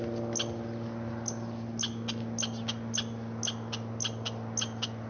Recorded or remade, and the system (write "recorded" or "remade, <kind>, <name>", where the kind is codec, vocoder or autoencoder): recorded